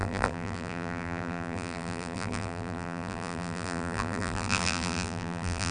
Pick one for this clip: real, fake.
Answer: fake